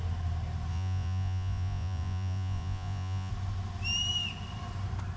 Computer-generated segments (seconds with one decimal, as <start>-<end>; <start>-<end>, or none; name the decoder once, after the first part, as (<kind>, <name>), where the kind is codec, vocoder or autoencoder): 0.7-3.3 (vocoder, Vocos)